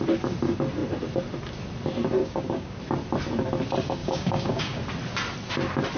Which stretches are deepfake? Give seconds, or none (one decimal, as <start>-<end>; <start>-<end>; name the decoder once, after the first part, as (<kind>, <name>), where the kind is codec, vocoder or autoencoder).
2.2-2.8 (codec, DAC); 4.0-4.8